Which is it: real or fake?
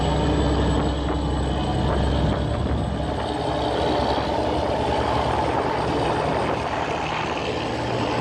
real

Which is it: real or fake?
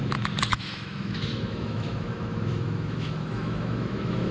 fake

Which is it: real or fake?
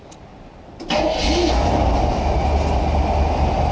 real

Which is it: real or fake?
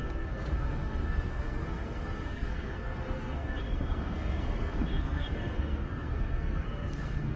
fake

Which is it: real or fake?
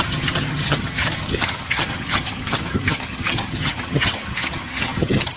fake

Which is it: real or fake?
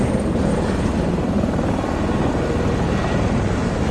fake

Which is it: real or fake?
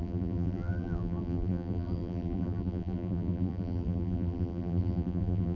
fake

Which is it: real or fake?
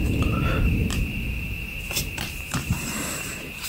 fake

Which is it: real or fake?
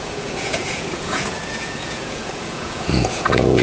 fake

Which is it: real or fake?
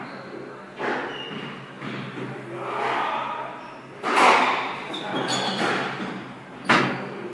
real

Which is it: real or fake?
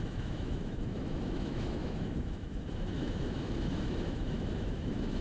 fake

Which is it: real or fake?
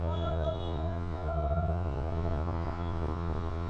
fake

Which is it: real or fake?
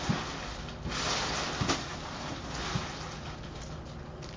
real